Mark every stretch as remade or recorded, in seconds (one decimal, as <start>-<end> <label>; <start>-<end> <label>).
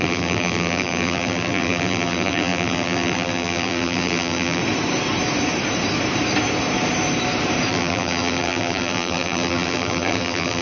0.0-4.6 remade; 4.6-7.7 recorded; 7.7-10.6 remade